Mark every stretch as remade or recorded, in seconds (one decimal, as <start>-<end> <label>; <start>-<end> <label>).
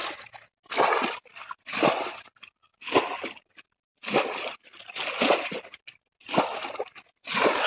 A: 0.0-7.7 recorded